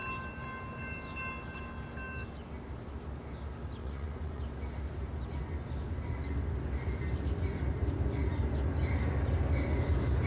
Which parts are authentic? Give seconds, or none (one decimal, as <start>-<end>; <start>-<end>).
0.0-3.8; 4.4-10.3